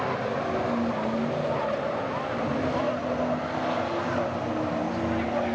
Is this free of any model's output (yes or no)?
yes